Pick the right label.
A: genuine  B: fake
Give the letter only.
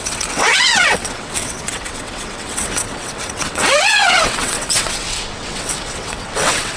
B